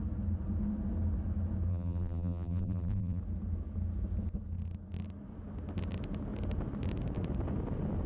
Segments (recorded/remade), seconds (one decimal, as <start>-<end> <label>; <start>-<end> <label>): 0.0-1.7 recorded; 1.7-3.2 remade; 3.2-8.1 recorded